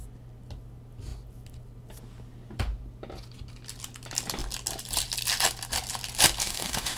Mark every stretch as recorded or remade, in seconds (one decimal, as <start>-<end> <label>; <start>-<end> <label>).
0.0-6.4 recorded; 6.4-7.0 remade